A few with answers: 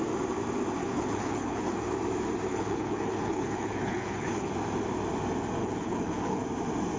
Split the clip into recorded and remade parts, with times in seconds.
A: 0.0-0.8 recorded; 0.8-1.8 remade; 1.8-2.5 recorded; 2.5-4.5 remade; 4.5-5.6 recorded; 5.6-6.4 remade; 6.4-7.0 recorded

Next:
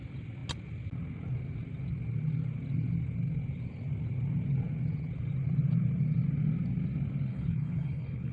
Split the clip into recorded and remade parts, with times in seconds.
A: 0.0-7.3 recorded; 7.3-8.3 remade

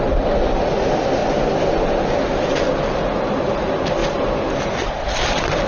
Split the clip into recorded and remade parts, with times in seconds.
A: 0.0-5.7 recorded